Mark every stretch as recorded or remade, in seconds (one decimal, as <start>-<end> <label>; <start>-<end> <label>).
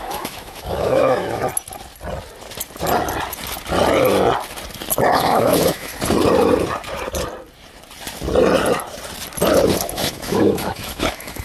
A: 0.0-1.4 remade; 1.4-5.1 recorded; 5.1-5.9 remade; 5.9-9.9 recorded; 9.9-11.4 remade